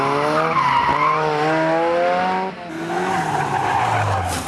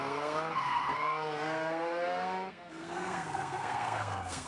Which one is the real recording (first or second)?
first